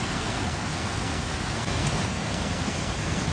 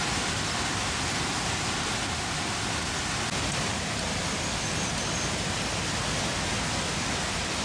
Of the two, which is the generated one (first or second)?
first